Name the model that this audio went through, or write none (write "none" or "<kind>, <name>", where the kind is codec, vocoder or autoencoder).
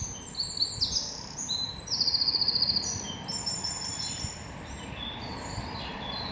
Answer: none